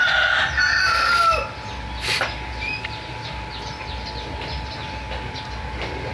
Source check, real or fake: real